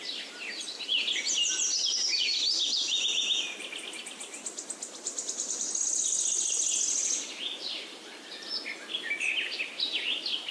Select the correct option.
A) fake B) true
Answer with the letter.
B